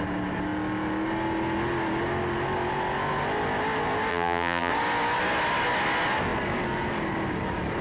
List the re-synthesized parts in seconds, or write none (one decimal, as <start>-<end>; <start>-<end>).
4.1-4.7